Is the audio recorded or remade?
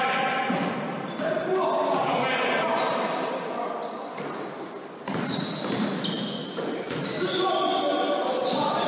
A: recorded